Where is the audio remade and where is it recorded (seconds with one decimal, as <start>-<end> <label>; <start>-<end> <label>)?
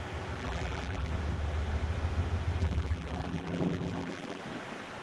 0.0-0.4 recorded; 0.4-1.1 remade; 1.1-2.6 recorded; 2.6-4.4 remade; 4.4-5.0 recorded